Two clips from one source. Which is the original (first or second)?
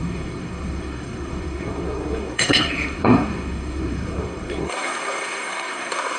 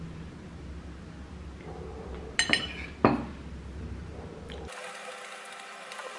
second